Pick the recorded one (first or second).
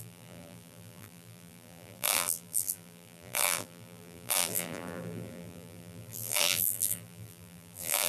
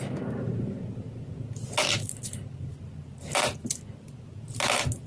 second